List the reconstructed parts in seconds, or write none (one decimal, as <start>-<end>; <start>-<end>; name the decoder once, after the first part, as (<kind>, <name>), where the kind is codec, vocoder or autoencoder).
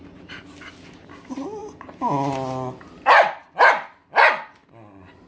none